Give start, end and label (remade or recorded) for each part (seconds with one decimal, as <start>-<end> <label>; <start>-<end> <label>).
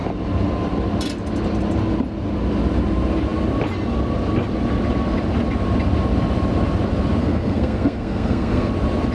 0.0-7.2 recorded; 7.2-8.7 remade; 8.7-9.1 recorded